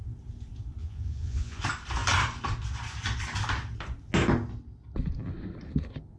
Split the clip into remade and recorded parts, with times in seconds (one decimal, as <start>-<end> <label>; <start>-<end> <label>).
0.0-0.8 recorded; 0.8-1.6 remade; 1.6-6.2 recorded